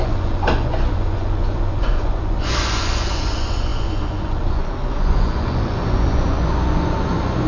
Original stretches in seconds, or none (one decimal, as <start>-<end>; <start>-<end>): none

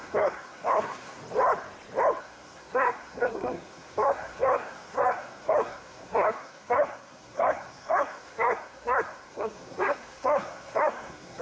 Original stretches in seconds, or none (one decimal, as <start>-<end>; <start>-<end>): 1.2-2.2

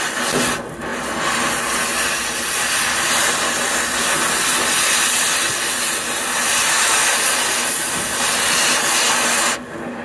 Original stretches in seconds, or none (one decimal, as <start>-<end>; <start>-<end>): 0.0-10.0

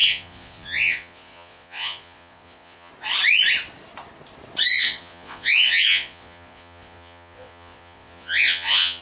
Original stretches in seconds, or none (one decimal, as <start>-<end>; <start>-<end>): 2.9-4.7